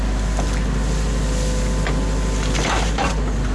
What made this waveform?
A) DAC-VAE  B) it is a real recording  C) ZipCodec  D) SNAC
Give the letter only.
B